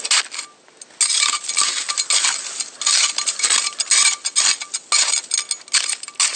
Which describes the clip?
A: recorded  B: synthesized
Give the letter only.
A